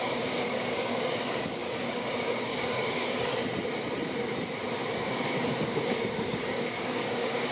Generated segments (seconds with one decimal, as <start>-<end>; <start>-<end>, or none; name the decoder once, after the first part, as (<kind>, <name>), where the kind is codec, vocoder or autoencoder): 0.0-3.3 (codec, DAC); 4.9-7.5